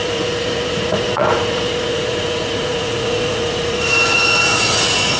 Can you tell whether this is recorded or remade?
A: remade